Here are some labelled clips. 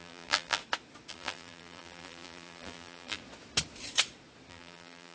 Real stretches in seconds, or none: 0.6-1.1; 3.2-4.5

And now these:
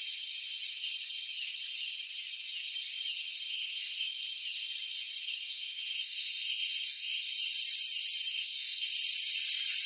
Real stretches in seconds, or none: 0.0-3.5; 4.2-5.4; 7.3-8.3; 8.9-9.9

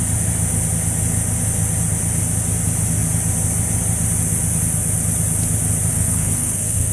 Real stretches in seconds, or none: 0.0-5.9

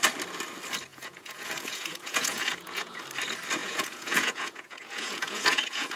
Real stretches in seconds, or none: 0.0-0.9; 3.0-3.6

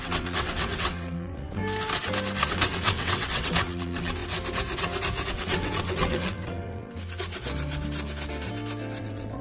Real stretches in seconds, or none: 1.6-2.5; 4.2-5.3; 6.9-9.0

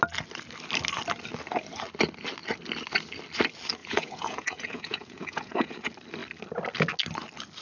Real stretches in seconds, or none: 0.0-3.8; 5.8-7.6

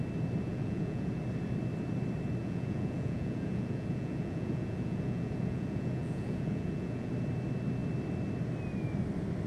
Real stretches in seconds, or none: 0.0-0.5; 1.1-2.4; 7.1-9.5